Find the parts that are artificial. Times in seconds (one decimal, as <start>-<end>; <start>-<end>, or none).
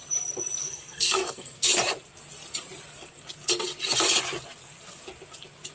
0.6-1.7